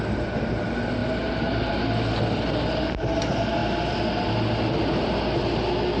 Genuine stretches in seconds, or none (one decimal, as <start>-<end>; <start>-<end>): 0.0-6.0